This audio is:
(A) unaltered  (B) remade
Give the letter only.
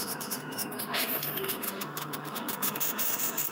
B